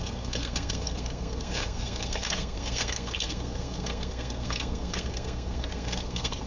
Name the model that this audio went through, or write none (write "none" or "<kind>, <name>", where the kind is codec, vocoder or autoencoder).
codec, SNAC